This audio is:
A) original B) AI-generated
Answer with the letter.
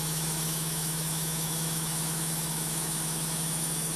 B